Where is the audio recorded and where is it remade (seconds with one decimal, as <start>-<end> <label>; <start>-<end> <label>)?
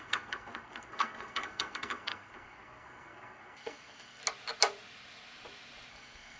0.0-4.2 remade; 4.2-5.9 recorded; 5.9-6.4 remade